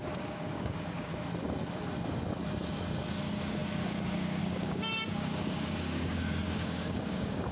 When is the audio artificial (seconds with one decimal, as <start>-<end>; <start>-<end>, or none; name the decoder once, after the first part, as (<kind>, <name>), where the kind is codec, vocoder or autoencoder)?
0.0-1.1 (codec, DAC); 3.2-7.5